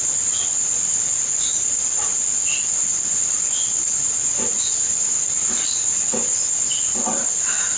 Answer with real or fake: real